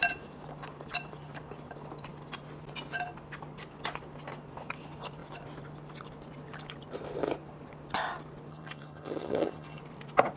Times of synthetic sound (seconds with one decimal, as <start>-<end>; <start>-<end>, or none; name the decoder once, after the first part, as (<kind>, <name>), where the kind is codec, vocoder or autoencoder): 8.5-9.8 (vocoder, HiFi-GAN)